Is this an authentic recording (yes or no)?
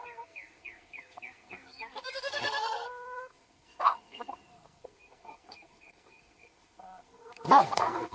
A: no